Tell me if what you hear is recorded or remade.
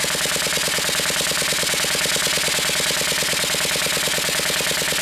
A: recorded